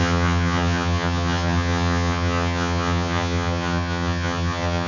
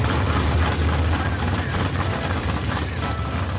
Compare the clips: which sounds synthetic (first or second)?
first